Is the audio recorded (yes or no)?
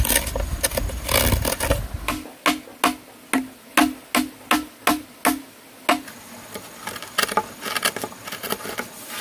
yes